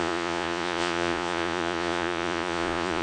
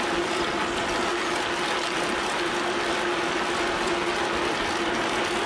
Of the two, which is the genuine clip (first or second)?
second